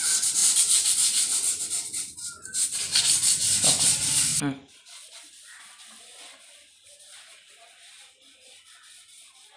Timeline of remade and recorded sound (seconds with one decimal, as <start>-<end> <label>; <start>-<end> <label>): 0.0-0.4 recorded; 0.4-3.0 remade; 3.0-4.3 recorded; 4.3-5.6 remade; 5.6-9.6 recorded